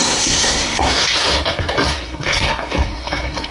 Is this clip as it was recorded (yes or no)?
no